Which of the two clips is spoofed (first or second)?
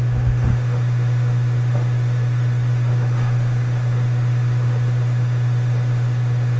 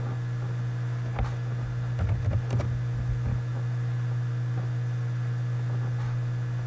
first